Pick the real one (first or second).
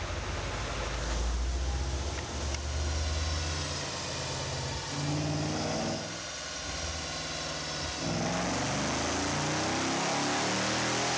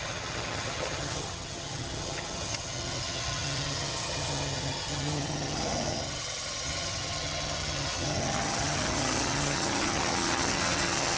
first